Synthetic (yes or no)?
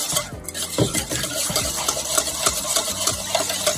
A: no